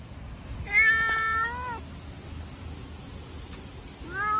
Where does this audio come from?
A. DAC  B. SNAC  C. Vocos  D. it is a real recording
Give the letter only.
D